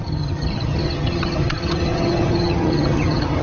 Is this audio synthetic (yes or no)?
yes